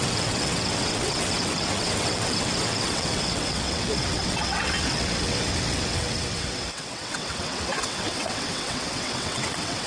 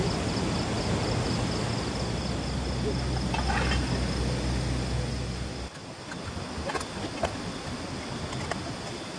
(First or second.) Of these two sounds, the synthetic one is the first